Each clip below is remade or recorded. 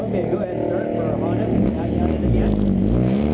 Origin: recorded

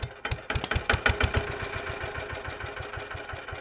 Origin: recorded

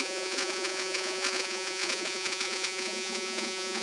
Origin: remade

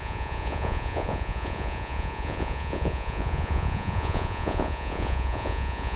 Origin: remade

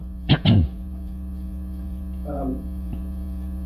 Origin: remade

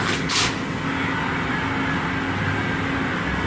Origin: recorded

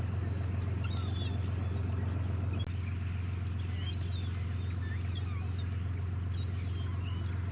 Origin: recorded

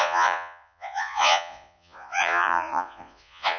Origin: remade